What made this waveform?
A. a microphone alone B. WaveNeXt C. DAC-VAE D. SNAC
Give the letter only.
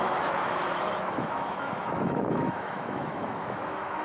C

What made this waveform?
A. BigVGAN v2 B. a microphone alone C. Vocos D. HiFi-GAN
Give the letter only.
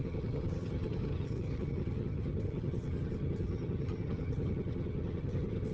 D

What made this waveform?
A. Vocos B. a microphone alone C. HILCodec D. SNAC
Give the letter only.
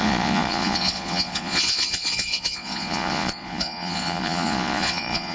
A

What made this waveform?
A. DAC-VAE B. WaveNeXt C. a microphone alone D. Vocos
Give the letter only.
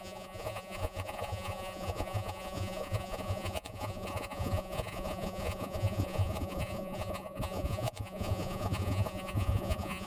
D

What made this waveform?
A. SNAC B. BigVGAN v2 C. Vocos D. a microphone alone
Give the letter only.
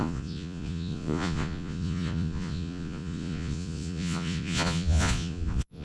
C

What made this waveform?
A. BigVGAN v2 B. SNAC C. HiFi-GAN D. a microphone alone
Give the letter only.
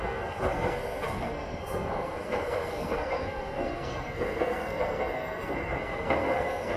B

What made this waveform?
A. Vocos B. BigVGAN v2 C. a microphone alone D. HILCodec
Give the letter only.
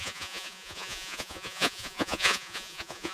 A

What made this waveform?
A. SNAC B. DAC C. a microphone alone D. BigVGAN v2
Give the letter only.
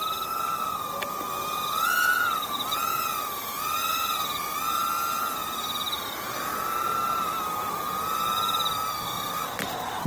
C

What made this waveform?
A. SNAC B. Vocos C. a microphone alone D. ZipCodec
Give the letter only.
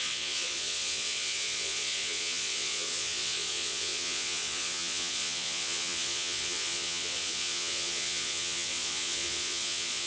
B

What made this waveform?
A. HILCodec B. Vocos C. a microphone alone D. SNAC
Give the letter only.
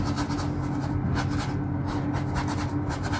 C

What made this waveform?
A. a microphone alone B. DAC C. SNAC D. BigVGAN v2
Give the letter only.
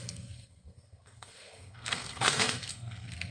C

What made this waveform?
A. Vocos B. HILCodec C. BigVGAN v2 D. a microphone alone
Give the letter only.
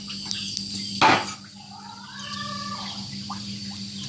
D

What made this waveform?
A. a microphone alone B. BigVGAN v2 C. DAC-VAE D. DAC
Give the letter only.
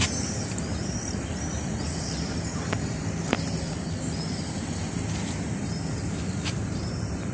B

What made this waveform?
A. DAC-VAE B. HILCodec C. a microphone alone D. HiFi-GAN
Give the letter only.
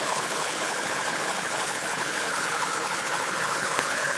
B